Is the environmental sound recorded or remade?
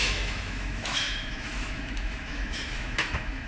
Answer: remade